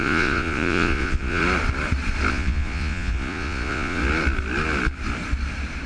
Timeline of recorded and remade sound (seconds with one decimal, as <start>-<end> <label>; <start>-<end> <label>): 0.0-1.4 remade; 1.4-2.3 recorded; 2.3-4.0 remade; 4.0-5.9 recorded